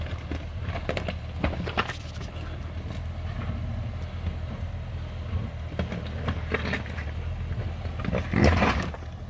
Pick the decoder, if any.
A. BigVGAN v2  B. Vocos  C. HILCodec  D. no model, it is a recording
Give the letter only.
D